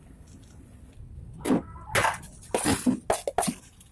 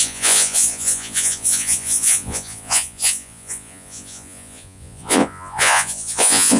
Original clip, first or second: first